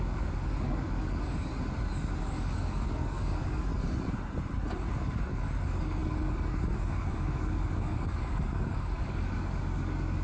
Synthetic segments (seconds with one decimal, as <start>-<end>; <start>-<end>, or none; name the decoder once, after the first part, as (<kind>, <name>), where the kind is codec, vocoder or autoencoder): 0.0-1.5 (codec, DAC); 2.2-3.7; 4.9-10.2